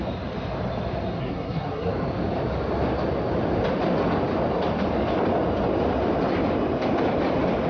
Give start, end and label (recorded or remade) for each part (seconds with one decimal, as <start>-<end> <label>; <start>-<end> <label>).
0.0-1.2 recorded; 1.2-1.9 remade; 1.9-7.7 recorded